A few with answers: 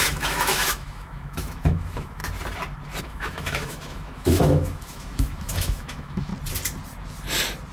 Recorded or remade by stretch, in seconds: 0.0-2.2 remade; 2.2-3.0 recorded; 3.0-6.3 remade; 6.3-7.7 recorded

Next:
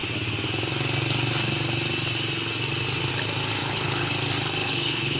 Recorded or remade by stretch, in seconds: 0.0-3.6 recorded; 3.6-4.1 remade; 4.1-4.6 recorded; 4.6-5.2 remade

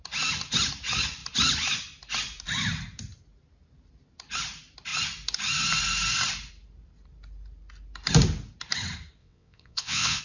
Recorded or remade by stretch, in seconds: 0.0-9.2 recorded; 9.2-10.2 remade

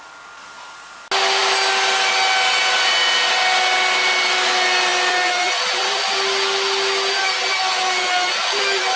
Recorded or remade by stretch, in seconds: 0.0-9.0 recorded

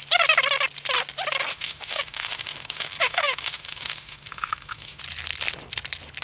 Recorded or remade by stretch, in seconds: 0.0-1.5 recorded; 1.5-5.0 remade; 5.0-6.2 recorded